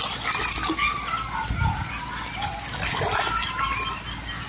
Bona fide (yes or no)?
yes